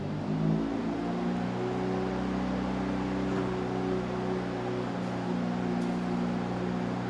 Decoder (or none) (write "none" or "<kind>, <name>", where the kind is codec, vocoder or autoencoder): none